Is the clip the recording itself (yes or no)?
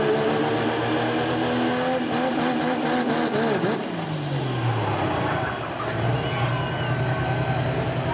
yes